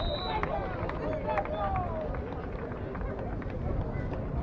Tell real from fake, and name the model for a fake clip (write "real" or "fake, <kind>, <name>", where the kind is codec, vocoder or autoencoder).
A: real